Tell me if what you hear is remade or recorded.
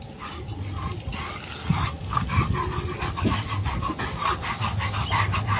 recorded